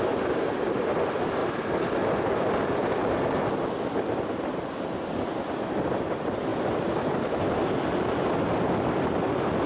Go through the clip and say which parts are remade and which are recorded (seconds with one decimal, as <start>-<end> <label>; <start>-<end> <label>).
0.0-9.7 recorded